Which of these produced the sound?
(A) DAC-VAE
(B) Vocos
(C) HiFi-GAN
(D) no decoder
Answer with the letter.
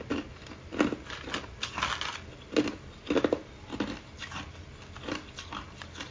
D